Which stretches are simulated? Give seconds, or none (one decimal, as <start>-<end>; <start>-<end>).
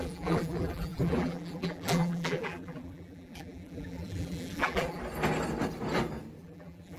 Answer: 0.0-5.0; 6.4-7.0